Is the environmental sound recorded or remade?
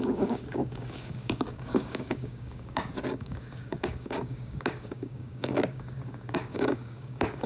remade